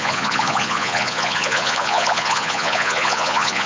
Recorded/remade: remade